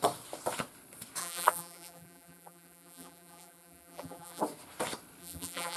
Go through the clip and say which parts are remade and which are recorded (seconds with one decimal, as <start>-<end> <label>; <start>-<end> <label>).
0.0-1.2 recorded; 1.2-4.4 remade; 4.4-5.2 recorded; 5.2-5.8 remade